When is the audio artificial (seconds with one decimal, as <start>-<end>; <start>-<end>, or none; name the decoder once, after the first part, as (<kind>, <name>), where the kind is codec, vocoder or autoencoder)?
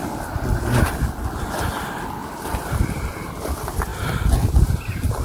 0.0-1.2 (vocoder, BigVGAN v2); 2.2-3.1